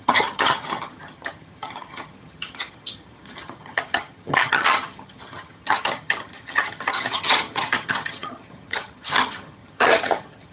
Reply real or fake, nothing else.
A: fake